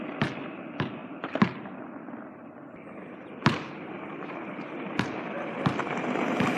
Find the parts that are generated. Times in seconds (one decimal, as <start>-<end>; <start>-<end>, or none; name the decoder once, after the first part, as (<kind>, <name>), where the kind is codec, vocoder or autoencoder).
1.0-5.0 (vocoder, BigVGAN v2)